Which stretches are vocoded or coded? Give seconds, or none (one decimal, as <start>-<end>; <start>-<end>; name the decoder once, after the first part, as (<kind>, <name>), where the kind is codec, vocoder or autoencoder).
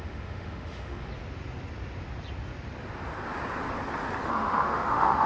0.0-1.1 (autoencoder, DAC-VAE); 4.3-5.3